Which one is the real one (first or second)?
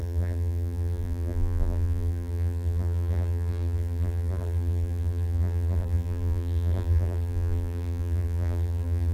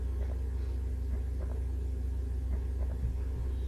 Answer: second